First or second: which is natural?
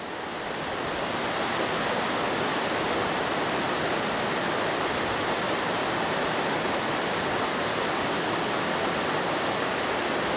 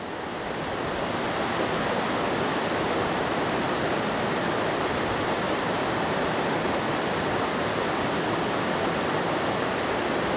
first